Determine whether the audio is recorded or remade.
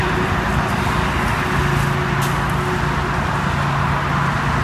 recorded